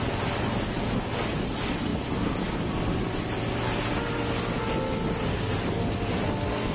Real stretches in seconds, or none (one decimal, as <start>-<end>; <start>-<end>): 0.0-6.7